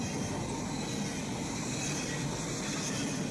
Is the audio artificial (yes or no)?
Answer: no